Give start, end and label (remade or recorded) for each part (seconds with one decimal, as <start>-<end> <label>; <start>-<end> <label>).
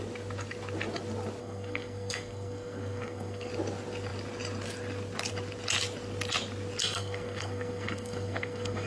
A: 0.0-1.4 recorded; 1.4-3.5 remade; 3.5-6.8 recorded; 6.8-8.9 remade